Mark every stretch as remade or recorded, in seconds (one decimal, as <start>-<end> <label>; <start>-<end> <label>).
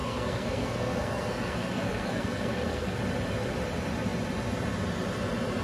0.0-3.0 remade; 3.0-5.6 recorded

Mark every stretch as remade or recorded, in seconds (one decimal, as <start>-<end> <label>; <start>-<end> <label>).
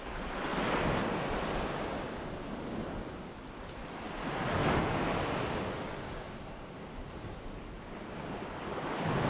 0.0-9.3 recorded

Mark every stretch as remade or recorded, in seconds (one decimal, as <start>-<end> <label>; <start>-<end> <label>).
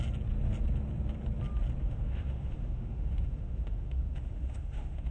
0.0-1.8 recorded; 1.8-5.1 remade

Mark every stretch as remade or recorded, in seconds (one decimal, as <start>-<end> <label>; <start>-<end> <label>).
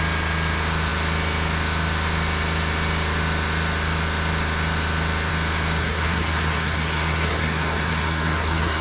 0.0-5.8 recorded; 5.8-8.8 remade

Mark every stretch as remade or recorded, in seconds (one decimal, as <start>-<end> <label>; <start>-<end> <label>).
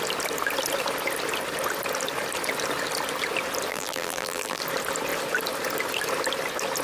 0.0-3.7 recorded; 3.7-4.6 remade; 4.6-6.8 recorded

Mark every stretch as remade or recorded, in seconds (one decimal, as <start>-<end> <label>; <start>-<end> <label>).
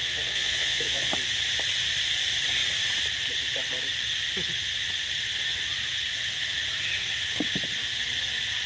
0.0-1.1 remade; 1.1-8.7 recorded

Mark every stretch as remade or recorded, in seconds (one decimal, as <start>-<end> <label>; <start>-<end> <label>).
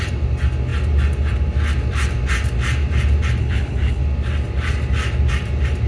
0.0-3.4 recorded; 3.4-4.0 remade; 4.0-5.9 recorded